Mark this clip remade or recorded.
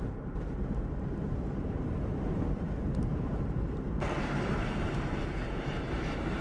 remade